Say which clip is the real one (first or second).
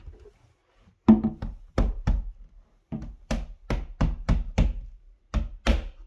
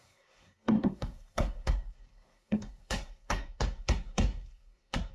first